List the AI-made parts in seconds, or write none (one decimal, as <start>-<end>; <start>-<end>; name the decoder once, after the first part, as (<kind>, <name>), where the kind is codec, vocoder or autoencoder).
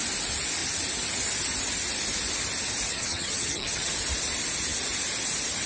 2.9-3.9 (vocoder, HiFi-GAN)